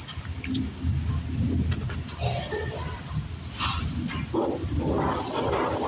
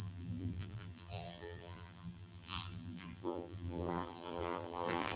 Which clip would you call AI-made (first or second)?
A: second